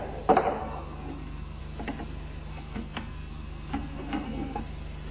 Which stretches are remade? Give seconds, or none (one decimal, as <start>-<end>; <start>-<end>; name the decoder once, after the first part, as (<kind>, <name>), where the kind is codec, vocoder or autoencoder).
0.6-1.6 (codec, SNAC); 2.5-4.6